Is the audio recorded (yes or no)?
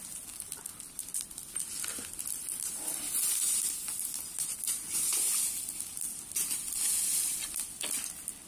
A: yes